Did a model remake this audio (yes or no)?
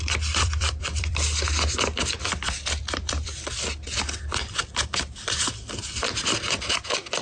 yes